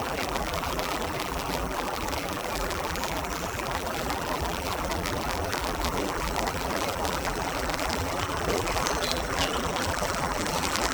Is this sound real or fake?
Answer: fake